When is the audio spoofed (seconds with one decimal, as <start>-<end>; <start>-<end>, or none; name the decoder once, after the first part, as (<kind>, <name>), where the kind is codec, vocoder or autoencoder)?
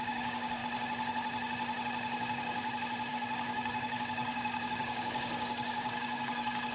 0.0-0.6 (codec, DAC); 3.1-6.7